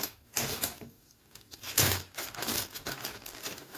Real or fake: fake